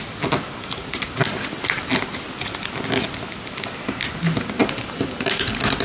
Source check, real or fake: real